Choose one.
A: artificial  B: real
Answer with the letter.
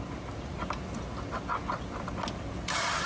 B